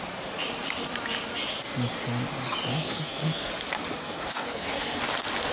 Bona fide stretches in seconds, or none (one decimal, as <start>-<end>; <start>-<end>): 0.0-2.7; 3.5-4.0; 5.0-5.5